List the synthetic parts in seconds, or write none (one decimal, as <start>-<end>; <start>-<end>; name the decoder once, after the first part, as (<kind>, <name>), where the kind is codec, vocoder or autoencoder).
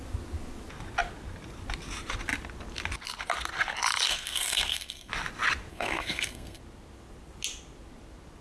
4.1-5.1 (codec, SNAC); 5.7-6.6